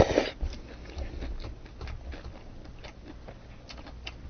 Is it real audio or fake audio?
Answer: real